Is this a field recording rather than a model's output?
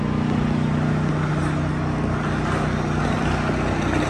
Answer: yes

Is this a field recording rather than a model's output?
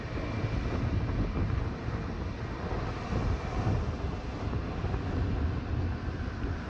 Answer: yes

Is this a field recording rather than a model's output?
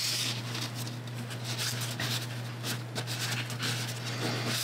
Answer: yes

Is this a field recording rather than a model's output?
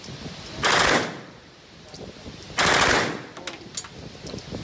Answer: yes